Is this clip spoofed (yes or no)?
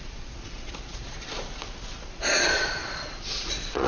yes